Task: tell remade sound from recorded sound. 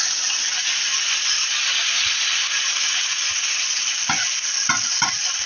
recorded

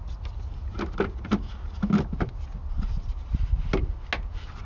recorded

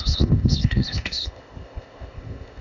remade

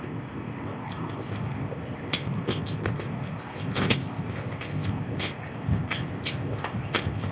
remade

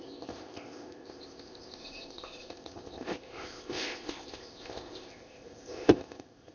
remade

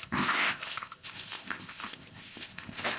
remade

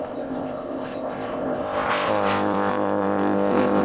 remade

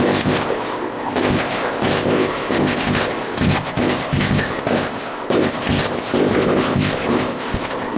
remade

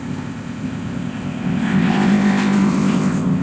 remade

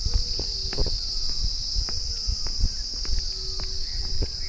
recorded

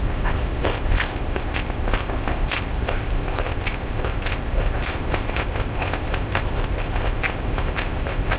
remade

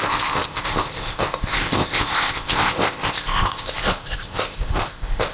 remade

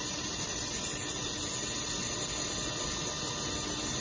recorded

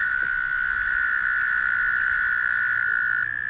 recorded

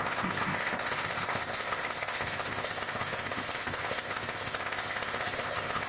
remade